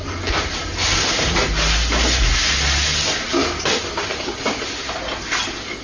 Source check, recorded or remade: recorded